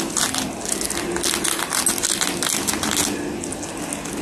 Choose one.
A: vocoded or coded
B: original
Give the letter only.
B